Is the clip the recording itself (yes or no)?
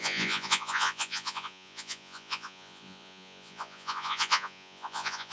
no